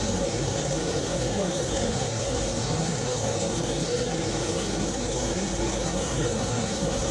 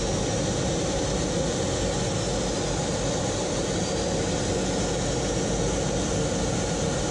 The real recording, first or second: second